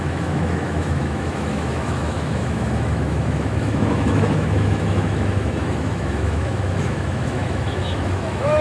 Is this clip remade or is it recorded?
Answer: remade